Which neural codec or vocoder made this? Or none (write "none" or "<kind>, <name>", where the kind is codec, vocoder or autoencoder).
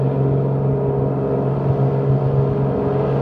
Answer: none